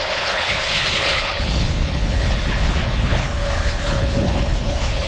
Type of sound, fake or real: fake